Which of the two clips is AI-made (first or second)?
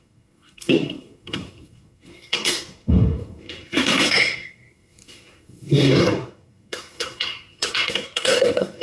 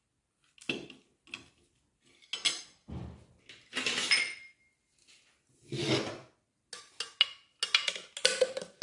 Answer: first